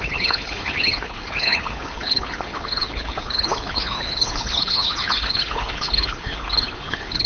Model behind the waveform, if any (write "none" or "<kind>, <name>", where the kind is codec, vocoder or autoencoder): codec, HILCodec